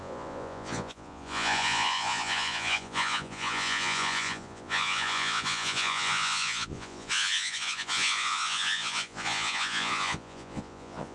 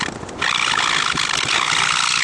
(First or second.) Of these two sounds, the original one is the second